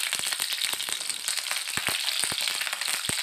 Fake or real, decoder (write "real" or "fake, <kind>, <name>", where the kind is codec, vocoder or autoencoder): real